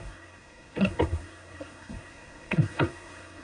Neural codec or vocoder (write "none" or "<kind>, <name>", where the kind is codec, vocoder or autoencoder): codec, SNAC